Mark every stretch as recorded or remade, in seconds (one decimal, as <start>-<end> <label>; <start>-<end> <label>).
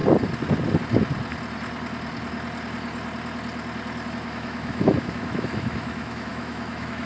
0.0-4.1 recorded; 4.1-7.1 remade